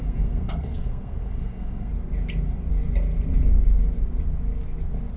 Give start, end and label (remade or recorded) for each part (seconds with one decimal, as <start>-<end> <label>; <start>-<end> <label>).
0.0-1.9 remade; 1.9-5.2 recorded